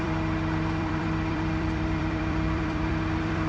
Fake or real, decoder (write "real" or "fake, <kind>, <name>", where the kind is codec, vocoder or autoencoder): fake, vocoder, BigVGAN v2